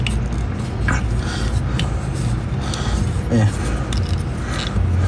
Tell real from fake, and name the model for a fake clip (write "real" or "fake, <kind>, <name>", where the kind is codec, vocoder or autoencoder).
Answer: real